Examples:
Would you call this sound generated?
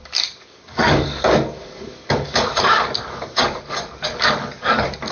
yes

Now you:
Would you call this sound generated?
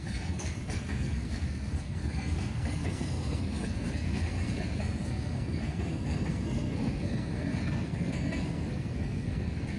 yes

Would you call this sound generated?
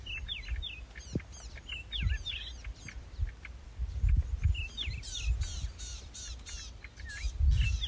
no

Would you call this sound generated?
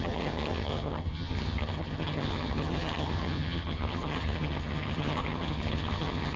yes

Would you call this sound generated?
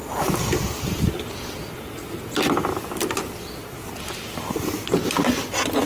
no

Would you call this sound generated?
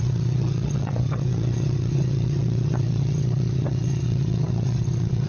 yes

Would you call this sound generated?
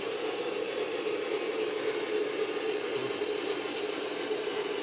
yes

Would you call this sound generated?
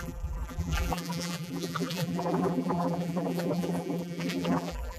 yes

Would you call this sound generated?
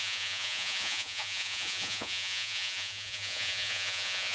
yes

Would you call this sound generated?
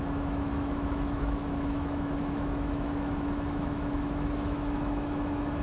yes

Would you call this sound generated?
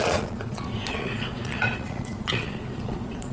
yes